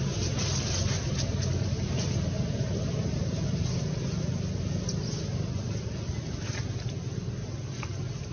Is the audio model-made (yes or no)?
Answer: no